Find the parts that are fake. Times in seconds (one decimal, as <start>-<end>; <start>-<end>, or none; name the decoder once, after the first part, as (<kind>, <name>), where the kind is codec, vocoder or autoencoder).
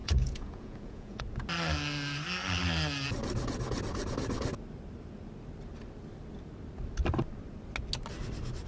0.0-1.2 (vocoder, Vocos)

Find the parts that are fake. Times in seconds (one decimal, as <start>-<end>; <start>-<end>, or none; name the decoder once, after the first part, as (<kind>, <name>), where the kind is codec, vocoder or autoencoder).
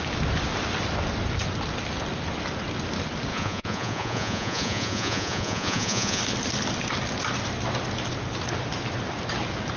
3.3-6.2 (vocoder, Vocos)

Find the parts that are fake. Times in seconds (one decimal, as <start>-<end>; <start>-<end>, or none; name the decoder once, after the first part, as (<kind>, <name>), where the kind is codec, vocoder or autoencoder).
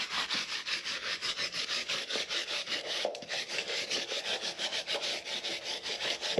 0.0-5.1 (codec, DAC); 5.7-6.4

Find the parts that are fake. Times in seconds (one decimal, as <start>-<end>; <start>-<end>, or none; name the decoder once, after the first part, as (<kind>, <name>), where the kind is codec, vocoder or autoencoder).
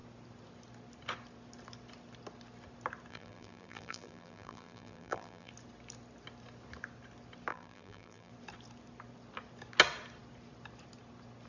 3.1-5.5 (vocoder, BigVGAN v2); 7.5-8.3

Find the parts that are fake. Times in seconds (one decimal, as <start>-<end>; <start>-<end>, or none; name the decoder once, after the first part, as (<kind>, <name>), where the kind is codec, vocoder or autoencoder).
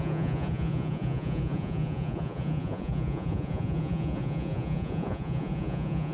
0.0-6.1 (vocoder, Vocos)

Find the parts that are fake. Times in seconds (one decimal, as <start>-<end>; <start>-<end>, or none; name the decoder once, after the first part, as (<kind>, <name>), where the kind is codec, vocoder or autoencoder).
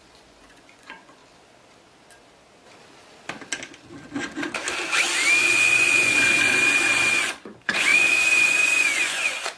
0.0-1.2 (vocoder, Vocos); 5.4-9.6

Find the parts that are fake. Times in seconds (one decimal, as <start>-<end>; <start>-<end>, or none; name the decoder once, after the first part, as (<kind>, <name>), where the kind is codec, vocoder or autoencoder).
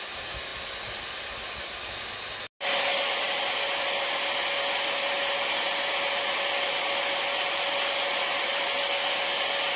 none